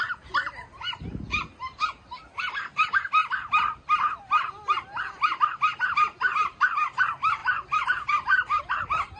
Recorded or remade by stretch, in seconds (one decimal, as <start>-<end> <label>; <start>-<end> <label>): 0.0-7.4 recorded; 7.4-8.6 remade; 8.6-9.2 recorded